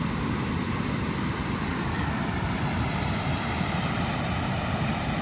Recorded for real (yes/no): no